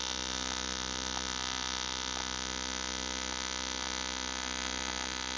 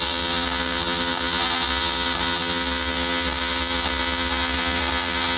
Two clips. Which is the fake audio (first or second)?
second